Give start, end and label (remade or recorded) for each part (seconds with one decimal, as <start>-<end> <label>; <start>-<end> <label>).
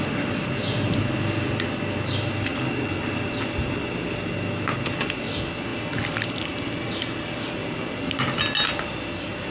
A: 0.0-9.5 recorded